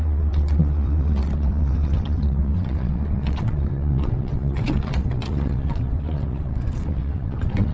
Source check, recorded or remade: remade